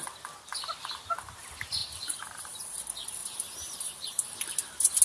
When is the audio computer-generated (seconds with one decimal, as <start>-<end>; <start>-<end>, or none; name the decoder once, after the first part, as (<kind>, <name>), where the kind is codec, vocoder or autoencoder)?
1.8-2.8 (vocoder, BigVGAN v2); 3.2-4.4